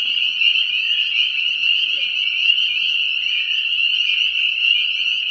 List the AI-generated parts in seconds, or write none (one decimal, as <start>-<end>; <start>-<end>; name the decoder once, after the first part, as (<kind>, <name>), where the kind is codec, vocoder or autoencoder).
none